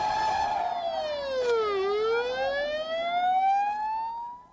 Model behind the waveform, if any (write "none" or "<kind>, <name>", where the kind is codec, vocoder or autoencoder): none